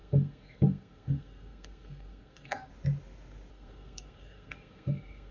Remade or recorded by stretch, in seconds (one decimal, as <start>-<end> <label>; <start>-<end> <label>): 0.0-2.7 remade; 2.7-3.5 recorded; 3.5-5.3 remade